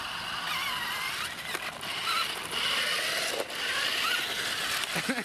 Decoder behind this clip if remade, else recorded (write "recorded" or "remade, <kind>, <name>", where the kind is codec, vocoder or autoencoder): recorded